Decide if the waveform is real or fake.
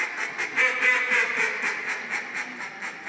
real